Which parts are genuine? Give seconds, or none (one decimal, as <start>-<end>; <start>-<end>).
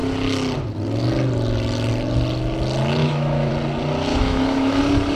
0.0-3.0; 3.5-4.1; 4.8-5.2